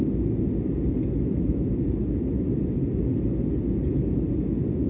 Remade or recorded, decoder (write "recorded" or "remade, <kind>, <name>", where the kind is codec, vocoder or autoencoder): recorded